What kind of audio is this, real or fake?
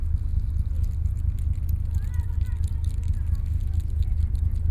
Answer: real